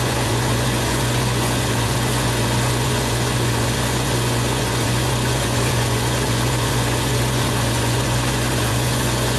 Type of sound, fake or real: fake